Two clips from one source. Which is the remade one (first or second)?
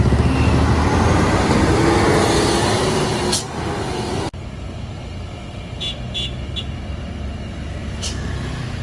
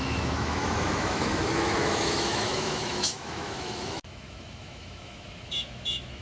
second